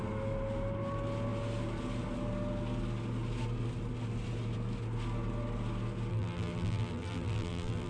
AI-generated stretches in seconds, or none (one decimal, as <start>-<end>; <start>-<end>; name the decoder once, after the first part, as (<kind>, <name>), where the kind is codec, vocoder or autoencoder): 6.1-7.9 (vocoder, BigVGAN v2)